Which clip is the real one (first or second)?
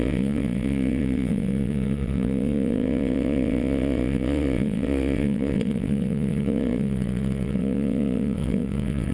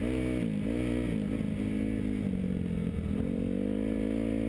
second